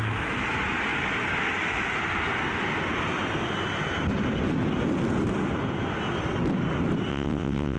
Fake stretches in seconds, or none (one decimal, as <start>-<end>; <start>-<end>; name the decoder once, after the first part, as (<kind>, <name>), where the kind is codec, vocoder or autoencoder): 7.1-7.8 (vocoder, WaveNeXt)